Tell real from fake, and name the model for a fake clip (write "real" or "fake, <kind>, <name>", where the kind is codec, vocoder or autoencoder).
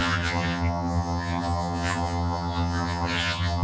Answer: fake, vocoder, HiFi-GAN